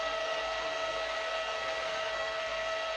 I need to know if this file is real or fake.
fake